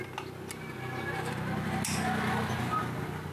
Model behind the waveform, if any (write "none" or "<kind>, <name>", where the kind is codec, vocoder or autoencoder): none